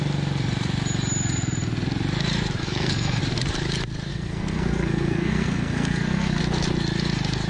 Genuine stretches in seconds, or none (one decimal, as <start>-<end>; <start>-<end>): 0.0-2.6; 3.2-4.1; 6.4-7.5